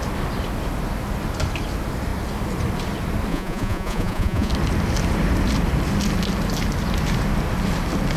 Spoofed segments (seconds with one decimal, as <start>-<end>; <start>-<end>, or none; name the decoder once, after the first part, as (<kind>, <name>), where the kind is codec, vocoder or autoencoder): 3.3-4.5 (vocoder, Vocos)